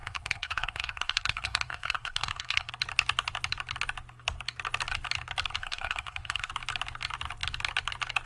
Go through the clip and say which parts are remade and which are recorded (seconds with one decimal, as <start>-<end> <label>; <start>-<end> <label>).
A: 0.0-2.7 remade; 2.7-5.6 recorded; 5.6-6.5 remade; 6.5-8.3 recorded